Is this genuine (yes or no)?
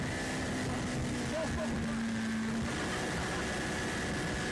yes